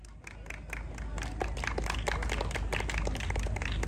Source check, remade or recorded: recorded